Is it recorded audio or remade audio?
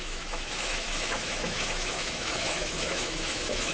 remade